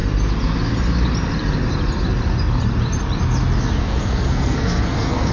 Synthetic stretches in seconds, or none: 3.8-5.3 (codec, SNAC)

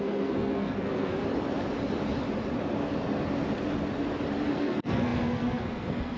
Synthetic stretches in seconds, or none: 0.0-1.1 (codec, SNAC); 4.5-6.2

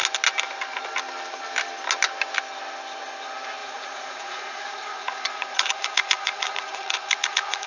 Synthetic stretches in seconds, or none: 3.6-7.7 (vocoder, Vocos)

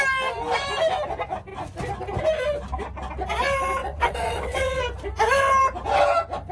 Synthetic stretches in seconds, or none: 3.8-4.8 (vocoder, WaveNeXt)